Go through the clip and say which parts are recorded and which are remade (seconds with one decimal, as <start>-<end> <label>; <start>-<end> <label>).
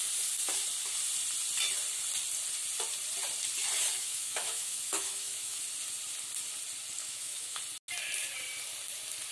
0.0-4.0 recorded; 4.0-5.6 remade; 5.6-7.0 recorded; 7.0-7.6 remade; 7.6-9.3 recorded